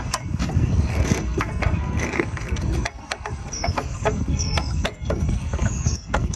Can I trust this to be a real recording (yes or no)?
no